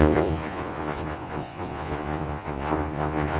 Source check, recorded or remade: remade